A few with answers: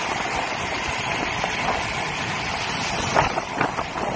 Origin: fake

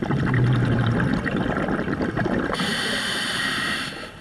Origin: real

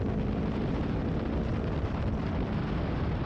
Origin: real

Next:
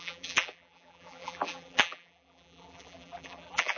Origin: fake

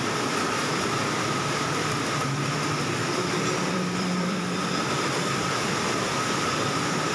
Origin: fake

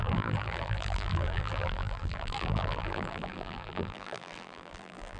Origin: fake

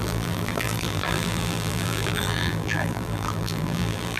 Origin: fake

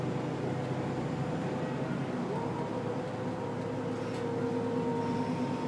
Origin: real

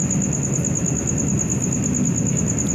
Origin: real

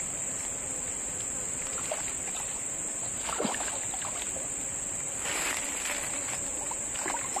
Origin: real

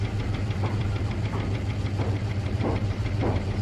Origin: fake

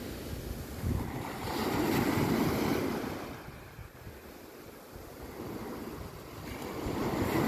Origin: real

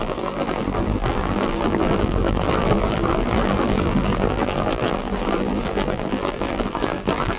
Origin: fake